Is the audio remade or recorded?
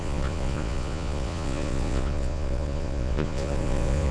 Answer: remade